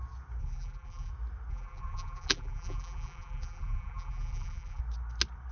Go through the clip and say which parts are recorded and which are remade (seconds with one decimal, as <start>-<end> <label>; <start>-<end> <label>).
0.0-0.4 recorded; 0.4-1.1 remade; 1.1-1.5 recorded; 1.5-4.8 remade; 4.8-5.5 recorded